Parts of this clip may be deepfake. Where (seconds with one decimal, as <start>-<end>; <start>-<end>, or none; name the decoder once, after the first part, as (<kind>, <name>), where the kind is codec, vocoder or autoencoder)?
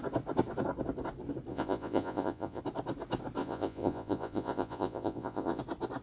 1.5-2.6 (vocoder, Vocos); 3.4-5.6